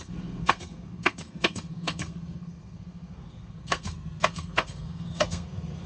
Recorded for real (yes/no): no